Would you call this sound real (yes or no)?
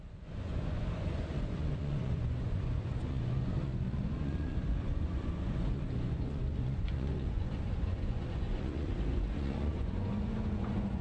no